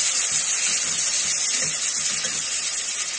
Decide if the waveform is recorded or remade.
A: recorded